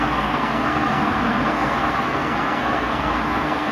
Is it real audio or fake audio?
fake